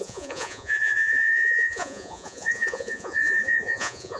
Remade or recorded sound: remade